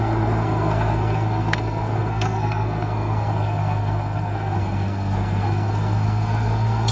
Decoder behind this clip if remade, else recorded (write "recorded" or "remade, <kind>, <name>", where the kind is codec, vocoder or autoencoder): remade, codec, SNAC